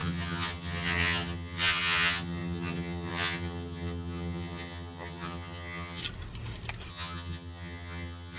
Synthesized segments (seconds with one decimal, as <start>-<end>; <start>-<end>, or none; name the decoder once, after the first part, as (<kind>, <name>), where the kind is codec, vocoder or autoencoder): 0.0-6.0 (vocoder, HiFi-GAN); 6.9-8.4